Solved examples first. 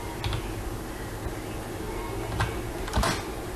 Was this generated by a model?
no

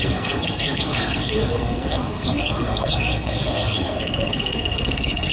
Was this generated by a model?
yes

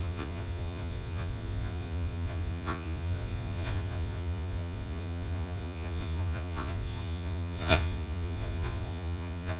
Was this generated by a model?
yes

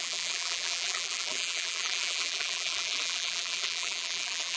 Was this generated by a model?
yes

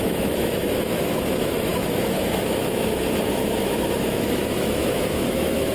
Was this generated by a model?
yes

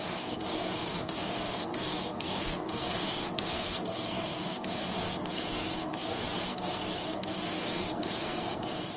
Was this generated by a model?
yes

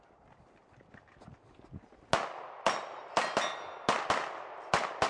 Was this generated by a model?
no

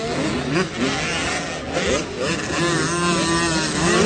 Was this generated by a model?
no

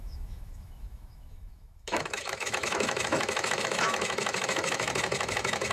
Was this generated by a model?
yes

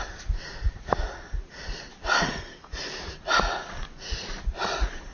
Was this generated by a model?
yes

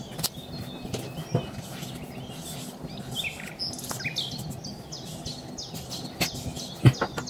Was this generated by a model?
no